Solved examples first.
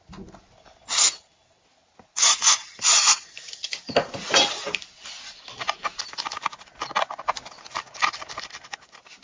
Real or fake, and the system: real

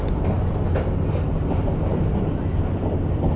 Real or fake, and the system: real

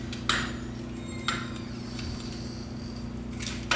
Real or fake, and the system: real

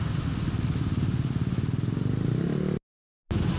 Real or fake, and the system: real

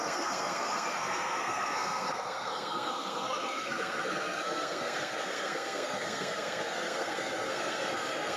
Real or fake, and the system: fake, codec, SNAC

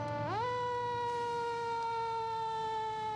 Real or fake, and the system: real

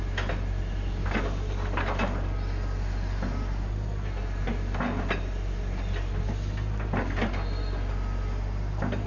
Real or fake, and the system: real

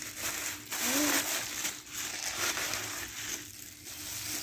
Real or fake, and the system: real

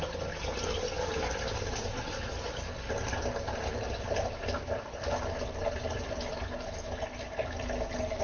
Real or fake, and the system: real